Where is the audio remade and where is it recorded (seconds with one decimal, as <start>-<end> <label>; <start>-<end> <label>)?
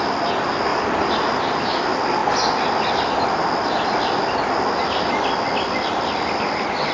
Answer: 0.0-6.9 recorded